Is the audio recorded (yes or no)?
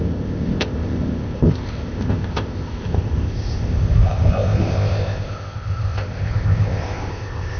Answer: no